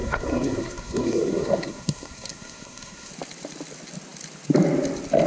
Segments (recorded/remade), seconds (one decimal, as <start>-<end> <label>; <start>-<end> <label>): 0.0-3.1 remade; 3.1-5.3 recorded